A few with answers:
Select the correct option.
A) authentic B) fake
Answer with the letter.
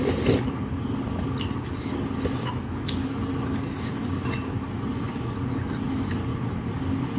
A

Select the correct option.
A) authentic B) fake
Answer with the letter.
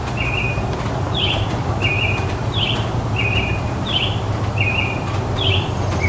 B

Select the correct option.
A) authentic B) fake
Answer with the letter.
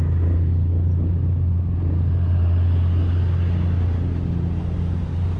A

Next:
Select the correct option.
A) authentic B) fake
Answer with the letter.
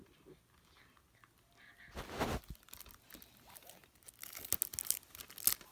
A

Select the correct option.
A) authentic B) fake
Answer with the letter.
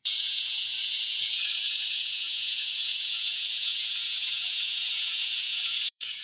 B